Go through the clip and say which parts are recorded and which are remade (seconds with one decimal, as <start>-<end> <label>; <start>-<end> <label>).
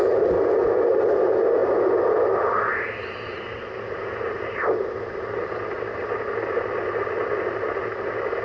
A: 0.0-8.4 recorded